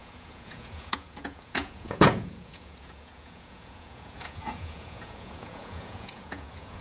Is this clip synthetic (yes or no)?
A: yes